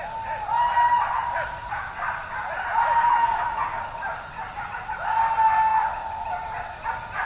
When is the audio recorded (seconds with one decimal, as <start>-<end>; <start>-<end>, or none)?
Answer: 0.0-3.1; 3.8-7.3